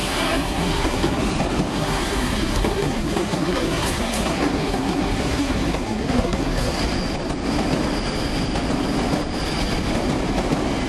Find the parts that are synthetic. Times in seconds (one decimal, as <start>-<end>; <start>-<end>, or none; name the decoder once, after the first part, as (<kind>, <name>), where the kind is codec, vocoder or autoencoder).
0.0-1.2 (codec, SNAC); 1.7-6.8